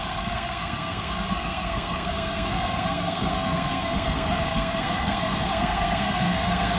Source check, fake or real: fake